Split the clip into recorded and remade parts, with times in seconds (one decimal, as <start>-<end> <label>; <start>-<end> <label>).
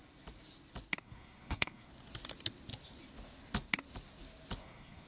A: 0.0-1.0 recorded; 1.0-1.9 remade; 1.9-4.6 recorded; 4.6-5.1 remade